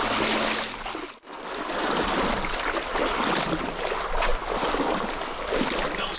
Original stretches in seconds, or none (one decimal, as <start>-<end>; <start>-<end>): 0.0-6.2